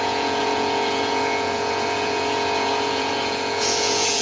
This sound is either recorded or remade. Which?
remade